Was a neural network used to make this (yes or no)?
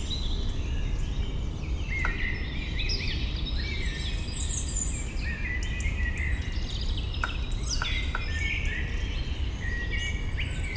no